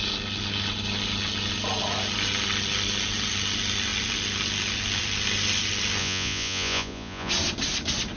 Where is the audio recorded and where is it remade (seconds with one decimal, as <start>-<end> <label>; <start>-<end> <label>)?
0.0-6.0 recorded; 6.0-7.3 remade; 7.3-8.2 recorded